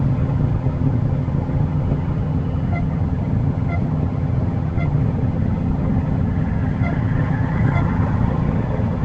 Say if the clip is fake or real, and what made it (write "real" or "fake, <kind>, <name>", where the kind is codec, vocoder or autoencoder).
fake, vocoder, HiFi-GAN